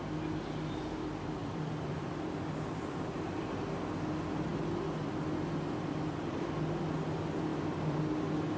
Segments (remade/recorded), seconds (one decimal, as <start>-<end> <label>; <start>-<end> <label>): 0.0-1.4 recorded; 1.4-3.9 remade; 3.9-7.5 recorded; 7.5-8.0 remade; 8.0-8.6 recorded